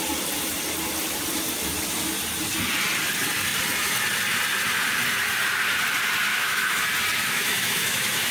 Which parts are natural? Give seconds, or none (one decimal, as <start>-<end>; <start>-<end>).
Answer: 0.0-6.3; 6.8-7.2

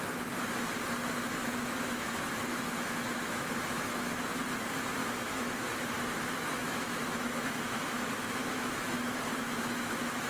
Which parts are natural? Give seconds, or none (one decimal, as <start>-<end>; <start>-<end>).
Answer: 0.0-1.4; 4.1-5.0